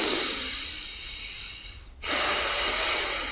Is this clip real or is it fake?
real